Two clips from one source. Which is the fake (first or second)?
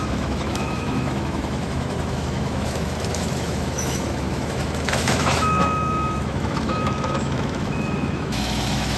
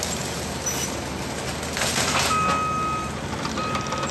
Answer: first